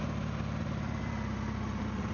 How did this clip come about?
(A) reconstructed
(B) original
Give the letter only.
B